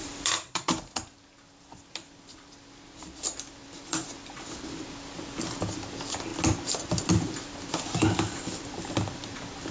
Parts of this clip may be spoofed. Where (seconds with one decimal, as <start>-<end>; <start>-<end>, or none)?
0.0-6.3; 6.9-9.7